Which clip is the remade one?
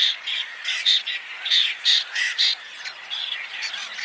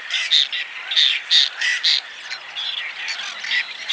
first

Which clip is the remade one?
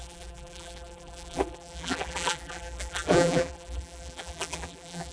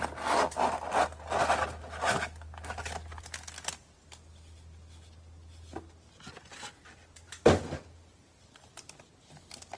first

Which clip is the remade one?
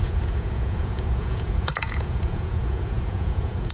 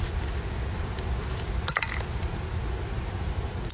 first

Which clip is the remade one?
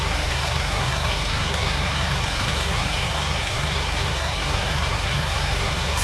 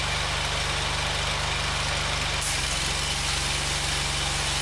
first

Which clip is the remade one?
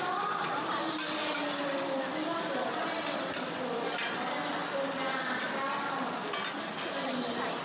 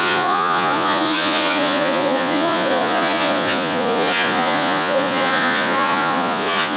second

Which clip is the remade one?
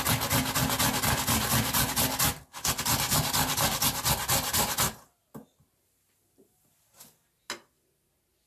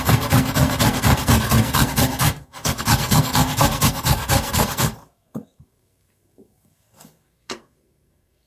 second